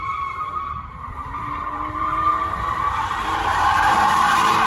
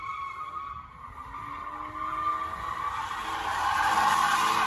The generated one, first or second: first